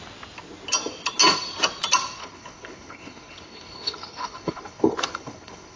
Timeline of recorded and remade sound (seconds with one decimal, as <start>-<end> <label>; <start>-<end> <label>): 0.0-2.2 recorded; 2.2-5.8 remade

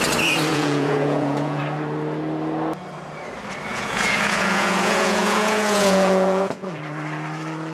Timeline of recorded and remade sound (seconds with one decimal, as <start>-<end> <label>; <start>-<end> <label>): 0.0-0.5 recorded; 0.5-1.6 remade; 1.6-3.7 recorded; 3.7-6.8 remade; 6.8-7.7 recorded

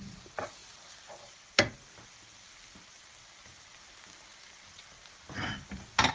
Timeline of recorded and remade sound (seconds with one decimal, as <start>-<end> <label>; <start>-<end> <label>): 0.0-6.1 recorded